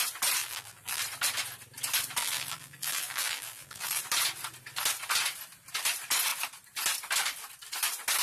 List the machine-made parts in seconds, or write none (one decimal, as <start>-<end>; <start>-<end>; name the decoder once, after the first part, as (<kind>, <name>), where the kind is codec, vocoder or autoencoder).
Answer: 0.4-1.0 (vocoder, BigVGAN v2); 2.2-4.0